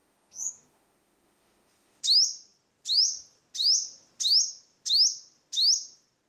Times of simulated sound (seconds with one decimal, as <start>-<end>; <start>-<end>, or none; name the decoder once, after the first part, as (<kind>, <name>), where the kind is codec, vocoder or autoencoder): 0.0-2.0 (autoencoder, DAC-VAE)